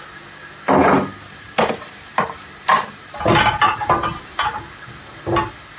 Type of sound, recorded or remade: recorded